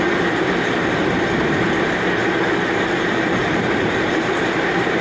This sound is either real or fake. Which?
real